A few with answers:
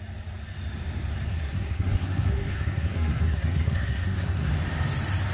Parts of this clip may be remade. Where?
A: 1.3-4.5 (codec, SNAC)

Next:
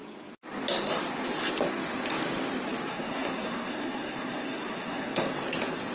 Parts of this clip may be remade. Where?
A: 2.9-5.3 (codec, SNAC)